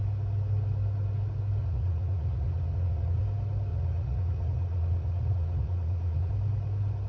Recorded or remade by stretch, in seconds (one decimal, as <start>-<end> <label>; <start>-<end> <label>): 0.0-1.6 recorded; 1.6-3.2 remade; 3.2-3.7 recorded; 3.7-6.3 remade; 6.3-7.1 recorded